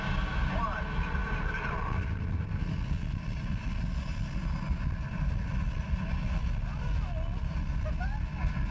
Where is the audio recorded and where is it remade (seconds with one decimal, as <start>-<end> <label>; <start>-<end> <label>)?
0.0-8.7 recorded